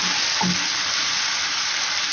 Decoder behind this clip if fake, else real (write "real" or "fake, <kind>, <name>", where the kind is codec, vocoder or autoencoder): real